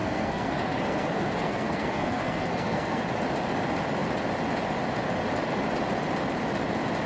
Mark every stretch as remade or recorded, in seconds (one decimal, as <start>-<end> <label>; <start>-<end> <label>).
0.0-3.0 remade; 3.0-7.1 recorded